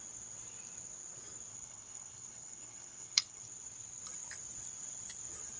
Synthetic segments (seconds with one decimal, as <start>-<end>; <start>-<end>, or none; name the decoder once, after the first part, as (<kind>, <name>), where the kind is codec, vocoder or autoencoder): 1.5-3.4 (codec, HILCodec)